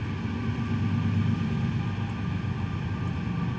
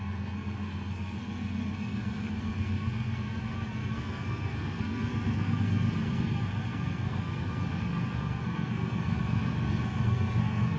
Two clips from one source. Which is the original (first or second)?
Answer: first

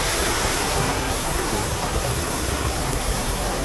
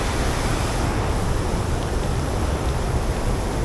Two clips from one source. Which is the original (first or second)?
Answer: second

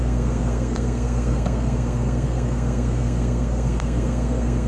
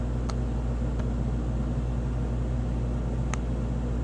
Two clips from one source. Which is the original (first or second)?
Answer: second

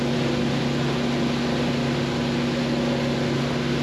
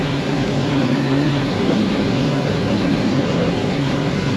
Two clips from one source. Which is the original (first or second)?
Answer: first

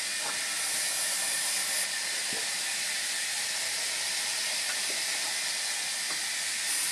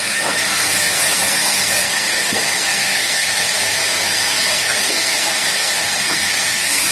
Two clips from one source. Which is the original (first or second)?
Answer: first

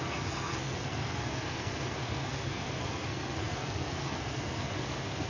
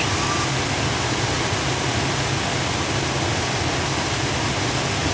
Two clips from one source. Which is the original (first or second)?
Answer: second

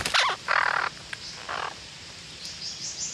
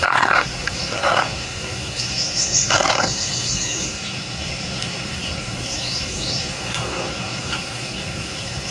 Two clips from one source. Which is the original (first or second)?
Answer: first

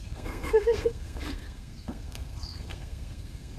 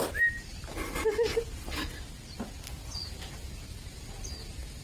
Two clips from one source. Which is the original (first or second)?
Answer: second